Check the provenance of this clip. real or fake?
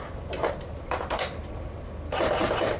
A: real